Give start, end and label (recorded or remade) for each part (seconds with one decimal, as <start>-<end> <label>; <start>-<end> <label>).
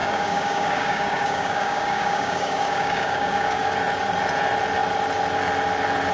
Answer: 0.0-3.7 remade; 3.7-6.1 recorded